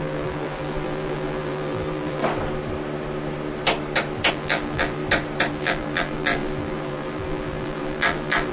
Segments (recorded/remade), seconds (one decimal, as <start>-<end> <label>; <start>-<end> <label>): 0.0-2.2 remade; 2.2-4.3 recorded; 4.3-5.0 remade; 5.0-5.5 recorded; 5.5-8.5 remade